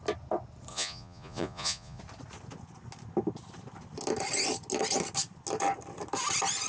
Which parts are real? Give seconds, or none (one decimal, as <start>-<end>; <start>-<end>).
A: 0.0-0.7; 2.0-6.7